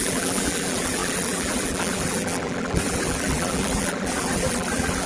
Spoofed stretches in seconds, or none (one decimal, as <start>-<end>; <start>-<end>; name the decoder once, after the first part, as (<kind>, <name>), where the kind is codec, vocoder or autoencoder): 0.0-5.1 (vocoder, BigVGAN v2)